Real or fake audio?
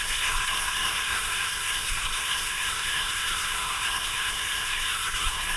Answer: fake